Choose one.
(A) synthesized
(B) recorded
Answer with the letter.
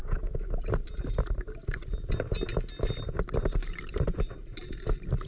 B